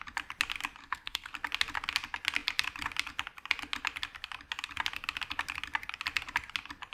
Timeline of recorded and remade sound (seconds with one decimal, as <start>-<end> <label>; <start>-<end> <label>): 0.0-0.8 recorded; 0.8-1.3 remade; 1.3-6.9 recorded